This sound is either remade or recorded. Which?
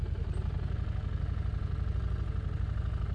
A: recorded